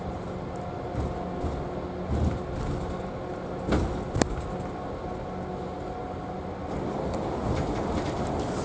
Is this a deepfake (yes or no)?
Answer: no